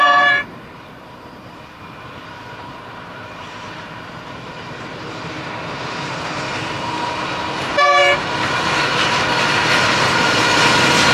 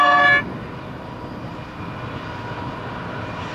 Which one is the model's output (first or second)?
first